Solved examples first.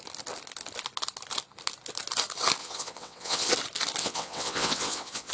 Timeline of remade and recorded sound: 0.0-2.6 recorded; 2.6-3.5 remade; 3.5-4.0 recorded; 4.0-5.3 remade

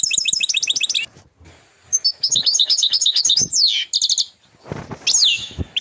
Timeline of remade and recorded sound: 0.0-1.9 recorded; 1.9-3.7 remade; 3.7-5.2 recorded; 5.2-5.8 remade

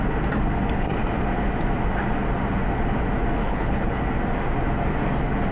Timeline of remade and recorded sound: 0.0-3.4 recorded; 3.4-4.0 remade; 4.0-5.5 recorded

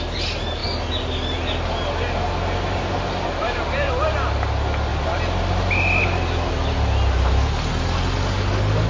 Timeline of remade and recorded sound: 0.0-8.9 recorded